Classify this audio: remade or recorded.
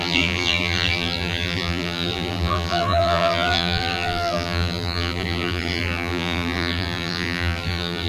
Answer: remade